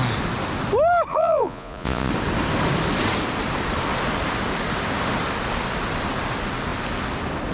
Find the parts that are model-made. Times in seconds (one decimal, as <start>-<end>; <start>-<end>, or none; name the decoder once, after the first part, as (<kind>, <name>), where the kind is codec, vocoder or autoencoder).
1.1-2.1 (vocoder, Vocos)